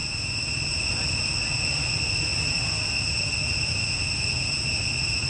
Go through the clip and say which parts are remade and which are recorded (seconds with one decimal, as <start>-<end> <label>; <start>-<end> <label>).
0.0-5.3 recorded